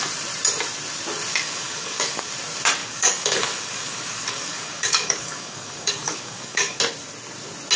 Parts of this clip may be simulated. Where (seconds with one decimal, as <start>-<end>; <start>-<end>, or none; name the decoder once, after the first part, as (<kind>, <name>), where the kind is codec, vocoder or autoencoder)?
1.3-2.3 (codec, DAC); 2.8-6.8